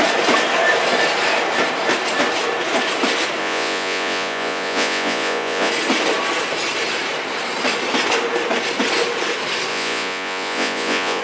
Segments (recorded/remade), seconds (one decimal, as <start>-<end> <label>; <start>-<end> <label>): 0.0-3.4 recorded; 3.4-5.7 remade; 5.7-9.7 recorded; 9.7-11.2 remade